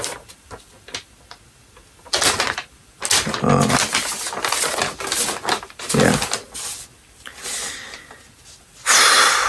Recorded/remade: recorded